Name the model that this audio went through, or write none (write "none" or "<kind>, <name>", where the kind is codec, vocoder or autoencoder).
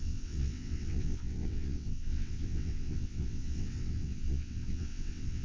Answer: vocoder, WaveNeXt